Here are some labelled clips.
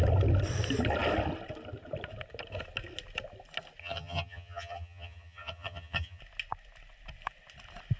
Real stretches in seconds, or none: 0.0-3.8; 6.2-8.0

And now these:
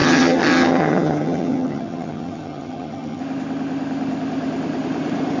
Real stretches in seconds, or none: 3.2-5.4

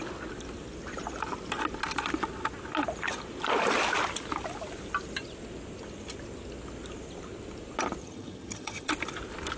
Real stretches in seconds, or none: 0.0-8.0; 8.9-9.6

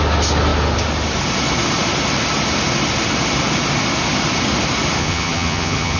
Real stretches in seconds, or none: 0.0-5.0

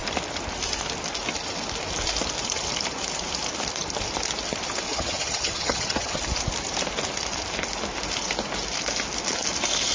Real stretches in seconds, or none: 0.0-4.9; 6.2-9.9

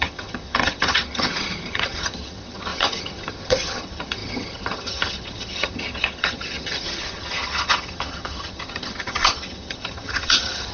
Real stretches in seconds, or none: none

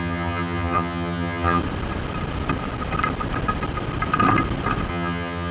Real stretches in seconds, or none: 1.6-4.9